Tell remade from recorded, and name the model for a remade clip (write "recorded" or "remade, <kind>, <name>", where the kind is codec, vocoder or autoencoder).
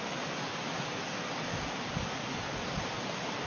recorded